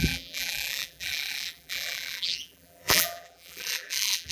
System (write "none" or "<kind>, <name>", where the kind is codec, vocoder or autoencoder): vocoder, BigVGAN v2